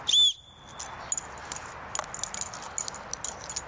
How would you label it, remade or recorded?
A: recorded